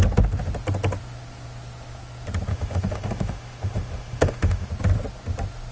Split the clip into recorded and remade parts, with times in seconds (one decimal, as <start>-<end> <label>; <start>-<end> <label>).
0.0-2.5 recorded; 2.5-4.7 remade; 4.7-5.7 recorded